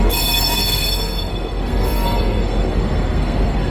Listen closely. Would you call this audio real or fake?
fake